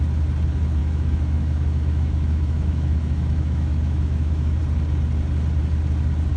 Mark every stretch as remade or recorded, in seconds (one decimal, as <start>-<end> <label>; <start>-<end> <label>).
0.0-0.8 recorded; 0.8-4.6 remade; 4.6-6.4 recorded